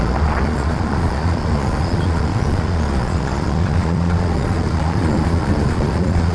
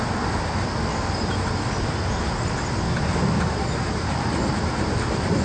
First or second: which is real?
second